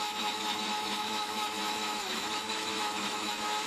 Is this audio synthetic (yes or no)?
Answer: yes